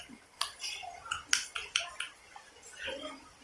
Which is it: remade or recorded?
recorded